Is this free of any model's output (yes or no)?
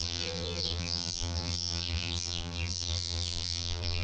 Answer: no